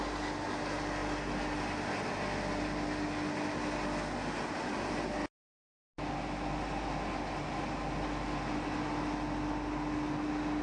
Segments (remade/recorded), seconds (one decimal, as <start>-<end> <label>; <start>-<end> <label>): 0.0-10.6 recorded